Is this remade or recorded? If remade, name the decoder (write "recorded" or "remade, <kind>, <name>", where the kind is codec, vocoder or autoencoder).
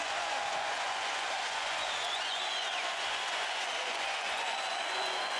remade, vocoder, Vocos